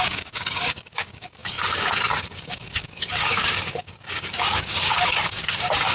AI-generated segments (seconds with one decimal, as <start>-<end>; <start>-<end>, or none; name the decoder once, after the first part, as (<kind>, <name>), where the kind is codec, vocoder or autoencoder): 0.0-5.9 (codec, DAC)